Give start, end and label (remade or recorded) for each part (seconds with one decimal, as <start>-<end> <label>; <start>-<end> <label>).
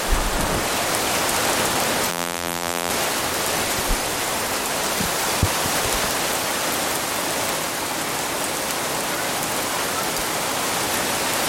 0.0-2.1 recorded; 2.1-2.9 remade; 2.9-11.5 recorded